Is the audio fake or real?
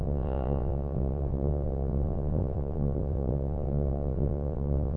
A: fake